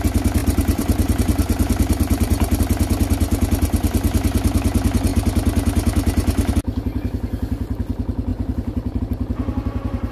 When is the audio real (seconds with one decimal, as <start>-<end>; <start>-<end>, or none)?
0.0-0.4; 2.6-8.3; 9.0-10.1